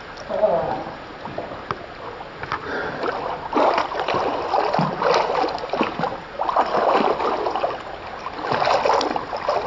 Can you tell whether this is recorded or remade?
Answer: recorded